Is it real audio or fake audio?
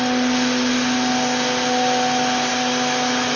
real